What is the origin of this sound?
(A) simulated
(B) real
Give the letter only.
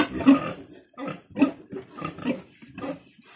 B